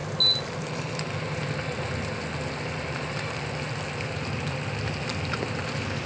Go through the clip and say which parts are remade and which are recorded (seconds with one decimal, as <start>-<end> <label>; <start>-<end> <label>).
0.0-6.1 recorded